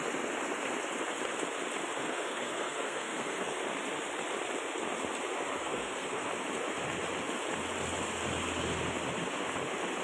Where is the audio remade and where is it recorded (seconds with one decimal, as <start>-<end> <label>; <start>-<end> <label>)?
0.0-2.0 recorded; 2.0-3.6 remade; 3.6-5.6 recorded; 5.6-6.3 remade; 6.3-10.0 recorded